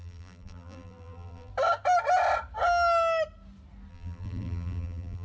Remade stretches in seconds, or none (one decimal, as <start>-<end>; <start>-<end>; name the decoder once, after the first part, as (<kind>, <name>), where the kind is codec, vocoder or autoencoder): 0.0-1.5 (vocoder, BigVGAN v2); 3.9-5.2